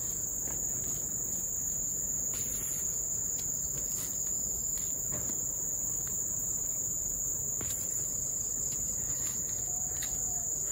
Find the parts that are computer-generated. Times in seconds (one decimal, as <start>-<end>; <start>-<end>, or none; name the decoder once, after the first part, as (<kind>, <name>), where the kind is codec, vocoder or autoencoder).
6.1-8.6 (vocoder, BigVGAN v2)